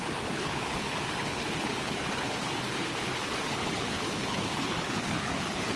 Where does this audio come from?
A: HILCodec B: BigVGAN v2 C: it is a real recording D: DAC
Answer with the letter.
A